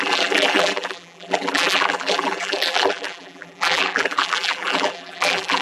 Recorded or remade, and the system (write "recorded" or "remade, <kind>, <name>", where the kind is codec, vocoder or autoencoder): remade, vocoder, BigVGAN v2